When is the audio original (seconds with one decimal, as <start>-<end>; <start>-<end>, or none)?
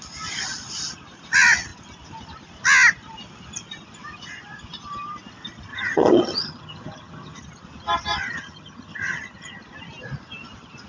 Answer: 0.0-5.7; 7.4-8.2; 9.6-10.9